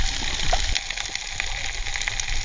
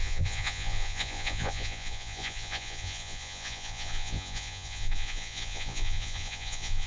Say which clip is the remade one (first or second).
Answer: second